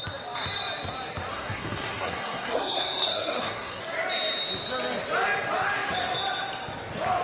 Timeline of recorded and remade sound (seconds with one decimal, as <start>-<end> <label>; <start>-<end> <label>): 0.0-1.3 recorded; 1.3-3.8 remade; 3.8-7.2 recorded